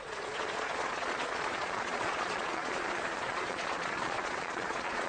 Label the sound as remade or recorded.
remade